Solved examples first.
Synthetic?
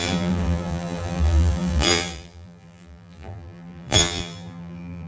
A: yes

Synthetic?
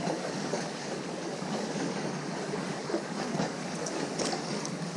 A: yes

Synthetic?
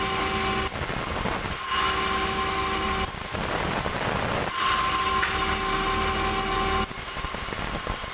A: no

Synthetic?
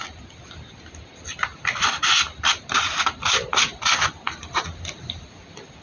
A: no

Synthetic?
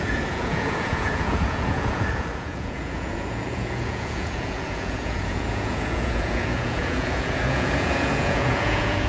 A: yes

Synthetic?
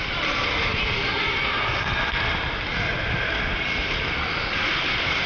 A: no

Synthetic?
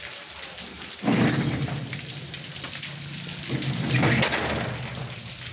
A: no